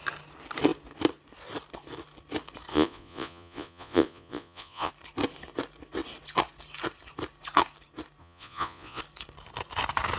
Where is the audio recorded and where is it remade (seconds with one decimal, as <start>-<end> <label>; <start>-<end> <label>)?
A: 0.0-2.7 recorded; 2.7-4.9 remade; 4.9-8.2 recorded; 8.2-9.0 remade; 9.0-10.2 recorded